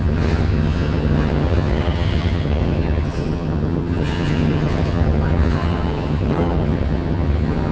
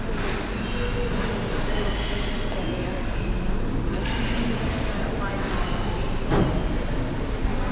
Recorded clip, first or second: second